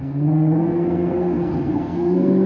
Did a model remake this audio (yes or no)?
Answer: yes